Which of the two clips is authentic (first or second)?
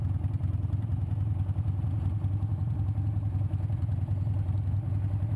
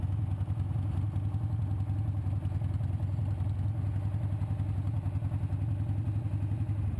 second